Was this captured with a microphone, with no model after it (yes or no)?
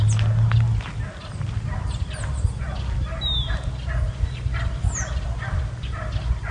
yes